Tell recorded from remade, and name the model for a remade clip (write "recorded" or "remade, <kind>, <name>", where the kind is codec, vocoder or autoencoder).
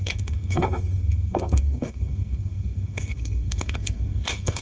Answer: remade, codec, SNAC